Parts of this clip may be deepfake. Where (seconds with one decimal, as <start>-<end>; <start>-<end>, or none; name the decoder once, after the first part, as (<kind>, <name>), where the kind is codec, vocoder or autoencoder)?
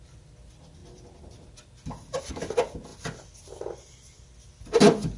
none